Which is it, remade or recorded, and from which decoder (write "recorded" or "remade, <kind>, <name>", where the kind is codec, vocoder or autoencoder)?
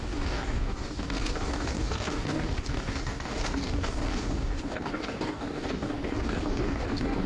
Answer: remade, codec, DAC